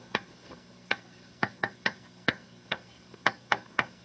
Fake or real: fake